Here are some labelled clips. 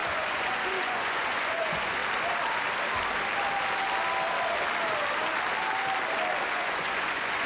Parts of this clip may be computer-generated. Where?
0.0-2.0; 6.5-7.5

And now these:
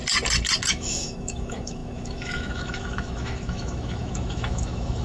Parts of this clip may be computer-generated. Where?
0.7-5.0

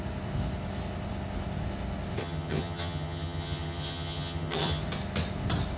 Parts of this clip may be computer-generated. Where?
2.2-4.8

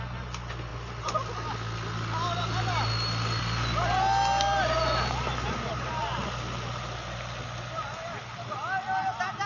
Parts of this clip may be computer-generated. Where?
none

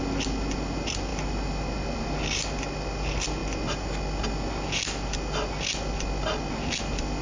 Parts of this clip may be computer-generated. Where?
none

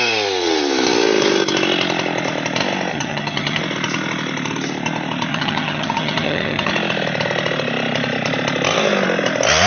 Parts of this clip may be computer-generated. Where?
2.9-3.6; 5.3-6.7